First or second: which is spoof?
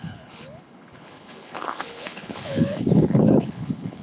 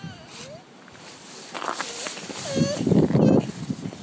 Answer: first